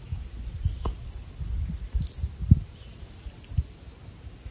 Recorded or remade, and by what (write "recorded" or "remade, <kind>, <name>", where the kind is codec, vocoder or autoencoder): recorded